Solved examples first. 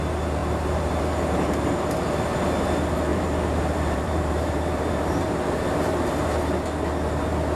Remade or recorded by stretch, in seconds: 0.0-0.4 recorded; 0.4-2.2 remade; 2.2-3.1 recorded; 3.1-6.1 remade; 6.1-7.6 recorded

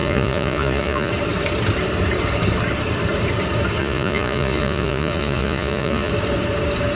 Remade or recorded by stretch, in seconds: 0.0-1.1 remade; 1.1-3.8 recorded; 3.8-6.1 remade; 6.1-7.0 recorded

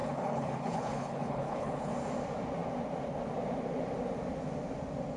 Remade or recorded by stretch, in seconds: 0.0-1.9 remade; 1.9-5.2 recorded

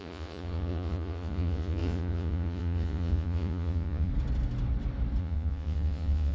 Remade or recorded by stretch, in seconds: 0.0-4.1 remade; 4.1-5.2 recorded; 5.2-6.3 remade

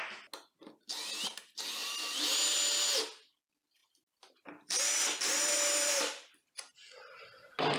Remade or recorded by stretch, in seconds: 0.0-1.8 recorded; 1.8-2.7 remade; 2.7-3.8 recorded; 3.8-6.9 remade; 6.9-7.8 recorded

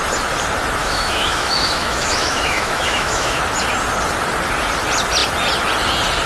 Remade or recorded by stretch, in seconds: 0.0-0.8 recorded; 0.8-3.4 remade; 3.4-6.3 recorded

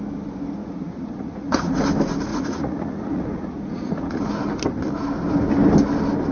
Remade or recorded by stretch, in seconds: 0.0-0.6 recorded; 0.6-1.8 remade; 1.8-2.3 recorded; 2.3-4.3 remade; 4.3-6.3 recorded

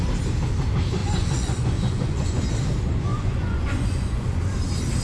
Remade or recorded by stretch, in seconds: 0.0-1.0 recorded; 1.0-2.4 remade; 2.4-3.1 recorded; 3.1-4.4 remade; 4.4-5.0 recorded